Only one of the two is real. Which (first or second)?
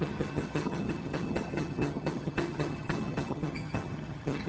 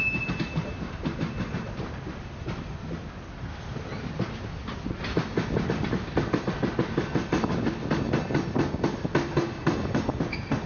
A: second